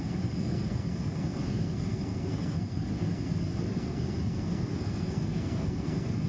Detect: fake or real fake